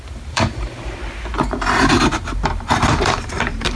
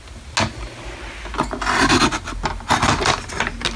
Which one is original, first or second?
second